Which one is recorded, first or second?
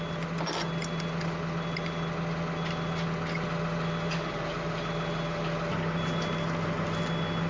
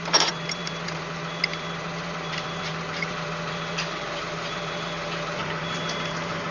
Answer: first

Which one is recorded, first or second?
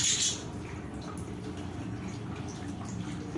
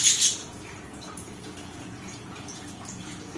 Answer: first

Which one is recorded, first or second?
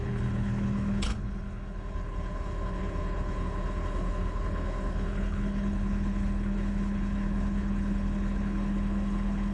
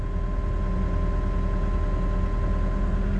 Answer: second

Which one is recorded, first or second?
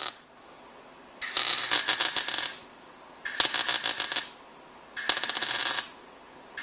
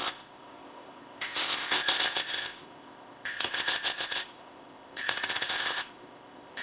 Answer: first